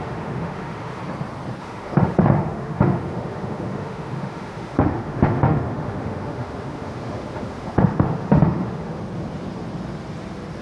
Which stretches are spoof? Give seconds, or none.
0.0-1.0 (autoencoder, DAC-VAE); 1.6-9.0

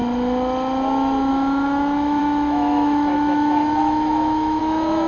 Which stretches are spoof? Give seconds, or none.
1.3-5.1 (autoencoder, DAC-VAE)

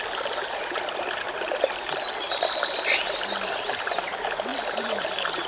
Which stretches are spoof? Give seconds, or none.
none

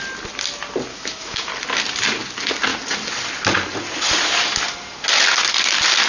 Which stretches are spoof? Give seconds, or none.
0.9-1.5 (autoencoder, DAC-VAE)

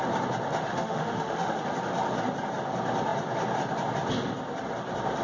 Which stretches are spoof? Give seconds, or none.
0.7-1.6 (autoencoder, DAC-VAE)

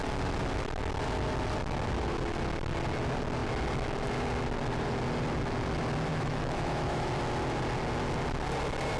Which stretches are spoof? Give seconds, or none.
6.1-7.1 (autoencoder, DAC-VAE)